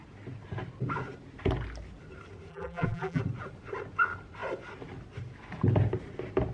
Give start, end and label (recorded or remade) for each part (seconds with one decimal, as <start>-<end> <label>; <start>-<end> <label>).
0.0-2.5 recorded; 2.5-3.2 remade; 3.2-6.5 recorded